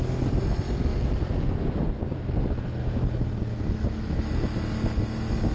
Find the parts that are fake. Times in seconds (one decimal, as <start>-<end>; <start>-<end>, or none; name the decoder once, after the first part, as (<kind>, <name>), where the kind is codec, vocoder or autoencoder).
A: 2.8-4.3 (autoencoder, DAC-VAE)